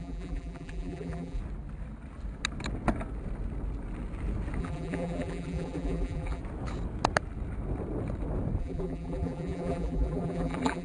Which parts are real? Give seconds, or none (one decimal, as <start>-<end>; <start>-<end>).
1.4-4.6; 6.4-8.6